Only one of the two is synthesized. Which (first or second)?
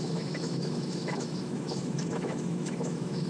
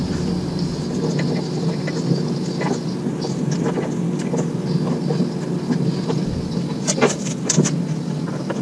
first